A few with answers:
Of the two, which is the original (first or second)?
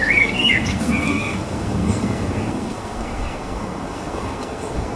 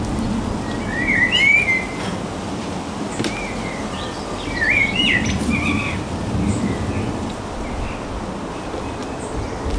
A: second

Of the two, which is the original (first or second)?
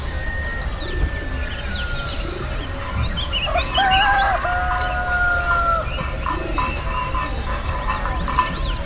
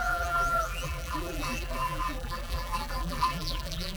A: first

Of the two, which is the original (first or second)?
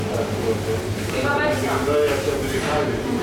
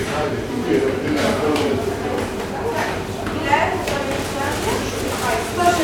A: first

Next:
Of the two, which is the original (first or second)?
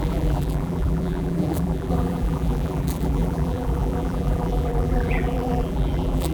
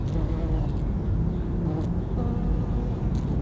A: second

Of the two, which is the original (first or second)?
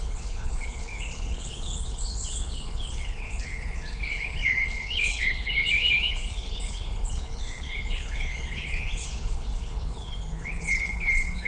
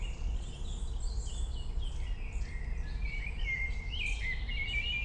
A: second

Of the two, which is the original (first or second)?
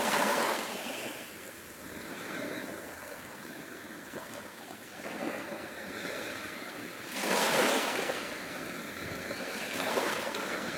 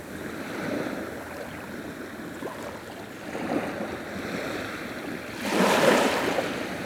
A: second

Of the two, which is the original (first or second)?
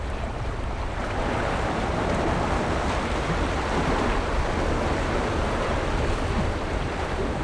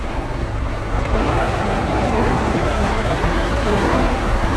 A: first